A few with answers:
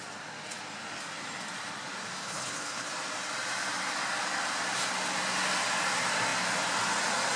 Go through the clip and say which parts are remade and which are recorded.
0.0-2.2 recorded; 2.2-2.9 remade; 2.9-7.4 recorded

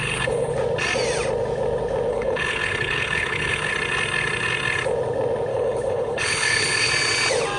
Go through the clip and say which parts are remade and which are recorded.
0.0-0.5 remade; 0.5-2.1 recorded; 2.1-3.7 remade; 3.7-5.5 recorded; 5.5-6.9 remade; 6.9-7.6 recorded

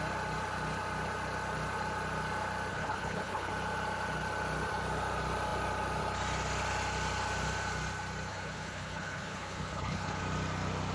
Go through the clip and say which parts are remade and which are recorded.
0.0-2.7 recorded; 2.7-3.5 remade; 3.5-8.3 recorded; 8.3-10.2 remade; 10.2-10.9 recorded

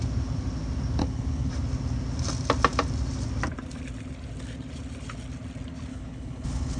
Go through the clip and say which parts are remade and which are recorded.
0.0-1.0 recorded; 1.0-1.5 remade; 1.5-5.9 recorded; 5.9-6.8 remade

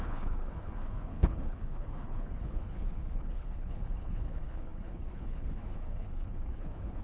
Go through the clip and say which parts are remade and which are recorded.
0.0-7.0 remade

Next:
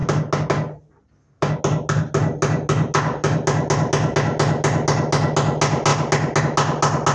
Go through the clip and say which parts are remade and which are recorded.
0.0-7.1 recorded

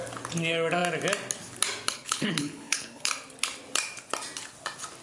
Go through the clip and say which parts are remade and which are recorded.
0.0-1.9 recorded; 1.9-3.1 remade; 3.1-5.0 recorded

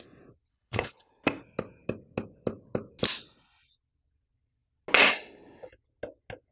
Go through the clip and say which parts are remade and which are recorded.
0.0-0.5 recorded; 0.5-1.1 remade; 1.1-6.5 recorded